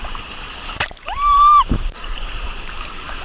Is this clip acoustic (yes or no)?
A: no